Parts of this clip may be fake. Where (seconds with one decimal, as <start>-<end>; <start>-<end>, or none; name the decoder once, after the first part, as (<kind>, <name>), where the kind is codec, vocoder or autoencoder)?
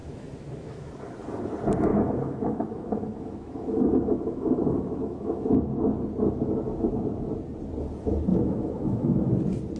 0.0-0.9 (autoencoder, DAC-VAE); 1.9-5.6; 8.3-9.4